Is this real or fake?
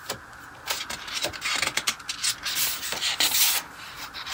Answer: real